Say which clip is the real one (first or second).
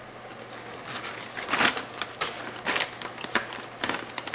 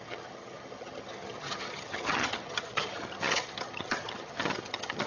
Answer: first